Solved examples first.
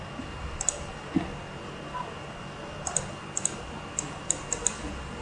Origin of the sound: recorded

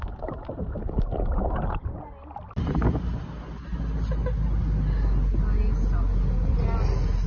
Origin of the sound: recorded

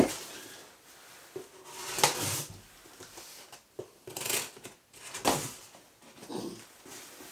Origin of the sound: recorded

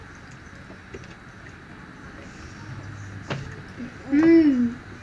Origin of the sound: recorded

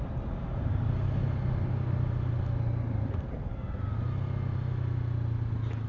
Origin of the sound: recorded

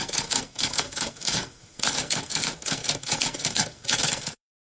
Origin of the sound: remade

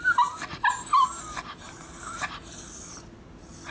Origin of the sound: recorded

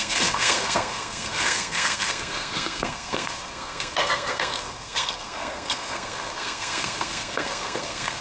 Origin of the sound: remade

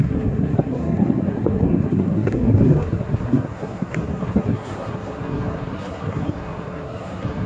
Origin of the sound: remade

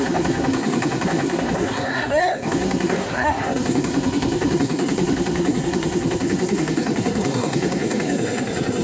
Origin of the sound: remade